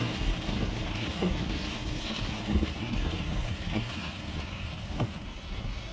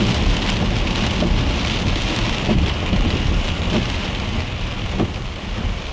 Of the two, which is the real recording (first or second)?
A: second